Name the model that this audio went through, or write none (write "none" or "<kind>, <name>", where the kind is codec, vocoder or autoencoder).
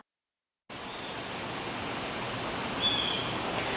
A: none